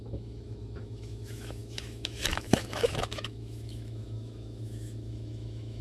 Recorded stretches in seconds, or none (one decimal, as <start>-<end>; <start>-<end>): none